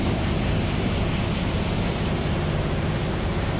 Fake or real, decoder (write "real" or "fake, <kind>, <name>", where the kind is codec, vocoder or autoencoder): fake, vocoder, BigVGAN v2